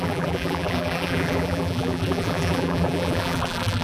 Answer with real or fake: fake